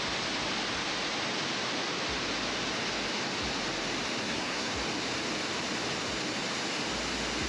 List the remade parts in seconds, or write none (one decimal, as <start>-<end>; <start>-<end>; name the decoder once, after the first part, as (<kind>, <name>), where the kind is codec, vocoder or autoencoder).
4.2-4.7 (codec, SNAC)